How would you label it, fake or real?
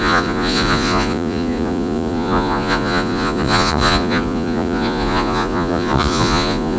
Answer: fake